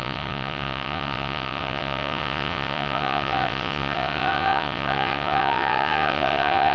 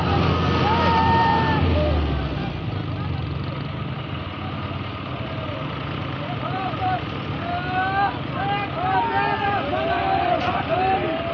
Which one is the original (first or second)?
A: second